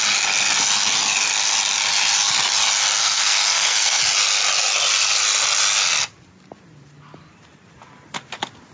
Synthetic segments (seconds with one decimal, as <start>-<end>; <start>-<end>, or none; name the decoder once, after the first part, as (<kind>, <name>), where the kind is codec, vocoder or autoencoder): 3.0-4.0 (codec, SNAC)

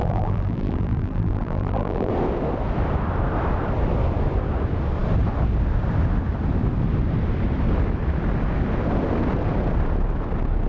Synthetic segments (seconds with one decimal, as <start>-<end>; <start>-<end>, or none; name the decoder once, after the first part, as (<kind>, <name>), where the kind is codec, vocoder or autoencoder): 0.0-2.1 (vocoder, BigVGAN v2)

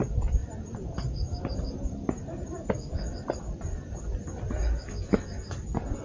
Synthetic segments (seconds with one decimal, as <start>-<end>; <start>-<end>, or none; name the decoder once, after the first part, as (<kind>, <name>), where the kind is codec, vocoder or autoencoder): 0.4-2.7 (vocoder, BigVGAN v2)

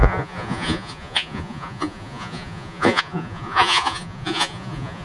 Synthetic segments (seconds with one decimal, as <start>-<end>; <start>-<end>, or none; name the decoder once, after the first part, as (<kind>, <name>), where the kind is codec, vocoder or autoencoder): 0.0-5.0 (vocoder, Vocos)

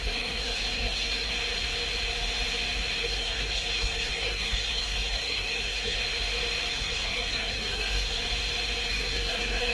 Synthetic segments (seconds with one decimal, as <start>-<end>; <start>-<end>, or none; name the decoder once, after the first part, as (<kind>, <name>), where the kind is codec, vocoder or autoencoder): 0.0-1.3 (codec, SNAC); 3.0-6.0; 6.7-8.2; 8.9-9.7

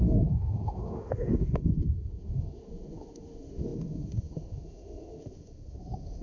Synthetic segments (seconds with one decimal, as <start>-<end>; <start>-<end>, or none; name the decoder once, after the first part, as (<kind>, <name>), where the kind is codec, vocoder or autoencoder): 0.0-6.2 (autoencoder, DAC-VAE)

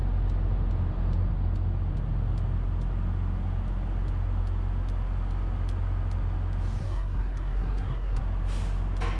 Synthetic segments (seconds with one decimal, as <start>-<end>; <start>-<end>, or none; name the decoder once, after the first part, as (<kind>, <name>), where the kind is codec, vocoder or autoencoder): 6.8-8.2 (codec, SNAC)

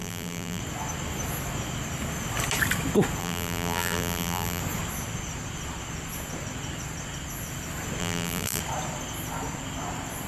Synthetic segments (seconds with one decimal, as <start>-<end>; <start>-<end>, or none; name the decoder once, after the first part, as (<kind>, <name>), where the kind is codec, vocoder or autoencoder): 0.0-0.6 (vocoder, BigVGAN v2); 3.2-4.6; 8.0-8.6